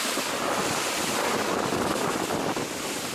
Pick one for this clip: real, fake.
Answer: real